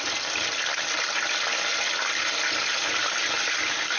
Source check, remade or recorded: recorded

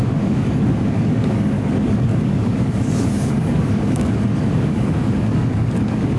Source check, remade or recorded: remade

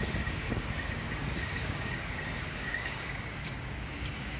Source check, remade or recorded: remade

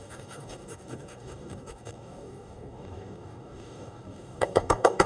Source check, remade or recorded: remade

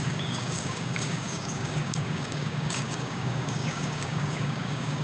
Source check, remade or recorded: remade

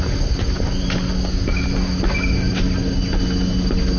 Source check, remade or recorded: recorded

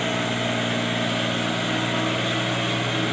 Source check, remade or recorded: recorded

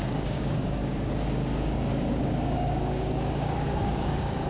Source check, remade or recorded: remade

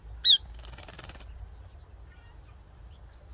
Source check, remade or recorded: recorded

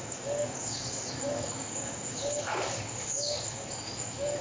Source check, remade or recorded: remade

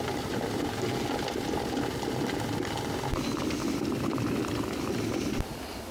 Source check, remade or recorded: recorded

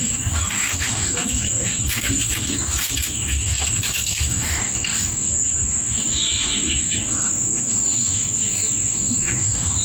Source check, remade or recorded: remade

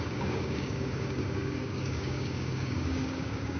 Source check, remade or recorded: remade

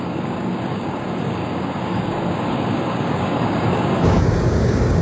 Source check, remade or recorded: remade